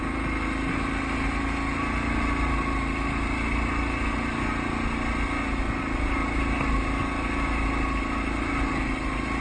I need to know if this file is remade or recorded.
recorded